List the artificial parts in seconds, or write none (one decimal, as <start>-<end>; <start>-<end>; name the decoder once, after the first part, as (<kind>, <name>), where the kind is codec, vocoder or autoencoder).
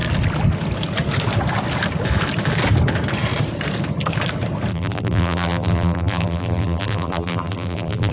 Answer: 4.7-8.1 (vocoder, BigVGAN v2)